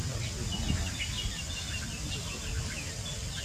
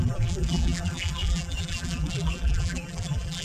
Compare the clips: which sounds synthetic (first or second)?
second